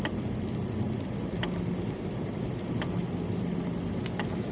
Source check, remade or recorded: recorded